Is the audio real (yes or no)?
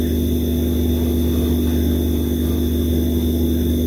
yes